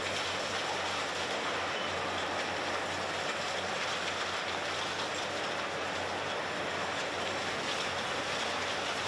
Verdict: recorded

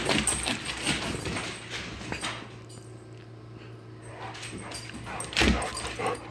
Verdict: recorded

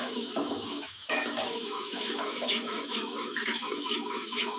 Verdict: remade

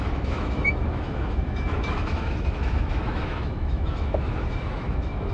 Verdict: remade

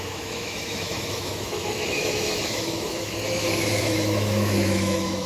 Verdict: remade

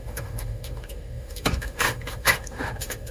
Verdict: remade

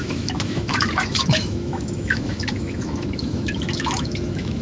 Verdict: remade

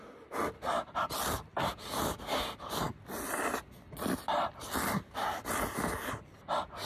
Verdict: recorded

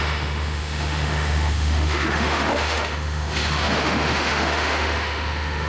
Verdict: remade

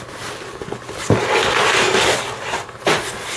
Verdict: recorded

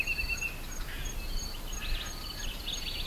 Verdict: recorded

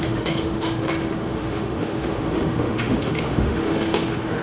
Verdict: remade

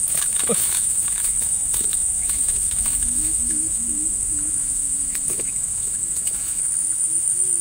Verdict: remade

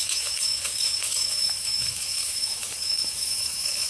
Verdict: remade